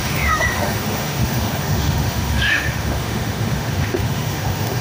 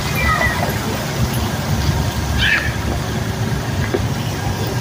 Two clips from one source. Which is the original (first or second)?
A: second